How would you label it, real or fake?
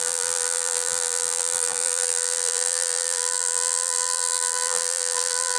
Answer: fake